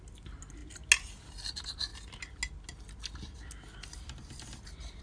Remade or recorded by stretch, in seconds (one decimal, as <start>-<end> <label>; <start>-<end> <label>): 0.0-5.0 recorded